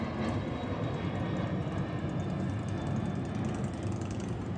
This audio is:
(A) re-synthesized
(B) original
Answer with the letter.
B